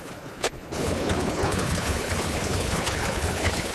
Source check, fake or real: fake